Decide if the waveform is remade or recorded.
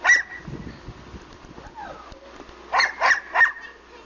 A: recorded